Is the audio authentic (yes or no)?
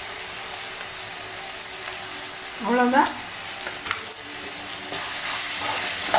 yes